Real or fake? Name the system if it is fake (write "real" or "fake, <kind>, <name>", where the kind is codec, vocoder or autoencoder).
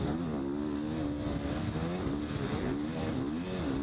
real